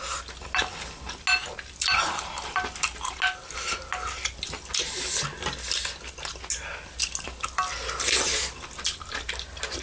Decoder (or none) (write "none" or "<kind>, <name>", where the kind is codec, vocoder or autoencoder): none